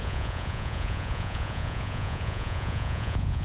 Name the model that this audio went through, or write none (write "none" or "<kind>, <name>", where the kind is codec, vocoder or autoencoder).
vocoder, Vocos